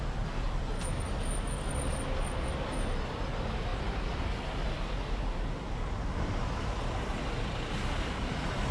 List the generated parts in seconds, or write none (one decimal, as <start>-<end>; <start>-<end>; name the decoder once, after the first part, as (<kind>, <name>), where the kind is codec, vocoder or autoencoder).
none

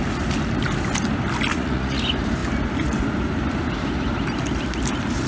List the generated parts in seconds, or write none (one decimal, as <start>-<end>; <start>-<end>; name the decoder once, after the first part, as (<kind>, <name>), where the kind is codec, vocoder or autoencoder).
1.5-2.0 (vocoder, Vocos)